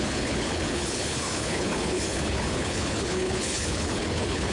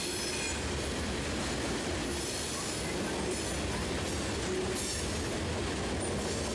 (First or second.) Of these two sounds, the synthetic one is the first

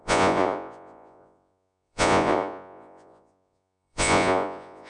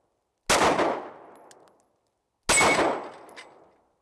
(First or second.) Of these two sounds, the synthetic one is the first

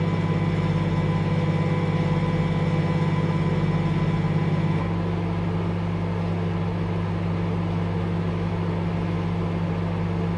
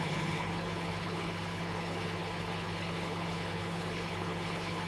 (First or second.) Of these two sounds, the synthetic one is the second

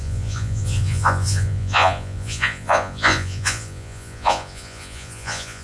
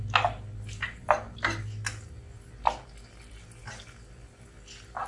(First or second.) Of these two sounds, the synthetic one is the first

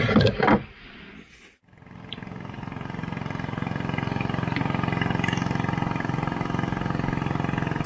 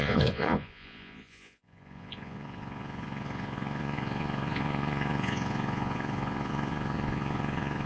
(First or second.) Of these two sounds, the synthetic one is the second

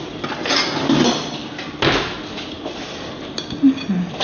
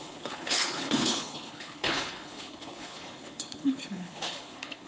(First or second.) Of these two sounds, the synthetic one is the second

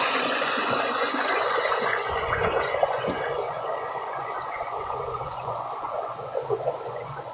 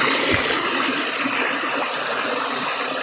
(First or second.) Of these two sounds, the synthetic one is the first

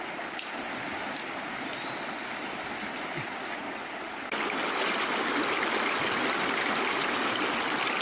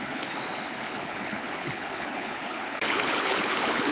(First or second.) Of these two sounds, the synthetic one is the second